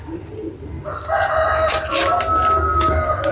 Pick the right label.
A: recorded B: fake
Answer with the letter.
A